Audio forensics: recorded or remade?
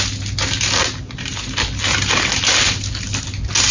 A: recorded